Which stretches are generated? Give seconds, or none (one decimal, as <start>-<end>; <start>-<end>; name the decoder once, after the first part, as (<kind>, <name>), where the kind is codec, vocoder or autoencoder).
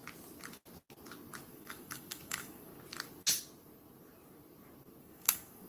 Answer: 1.5-2.7 (codec, DAC); 5.0-5.7